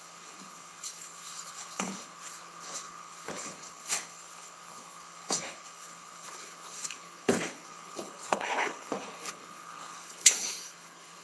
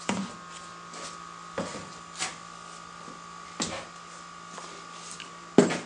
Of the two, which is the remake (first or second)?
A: first